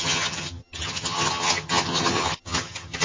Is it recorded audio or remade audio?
remade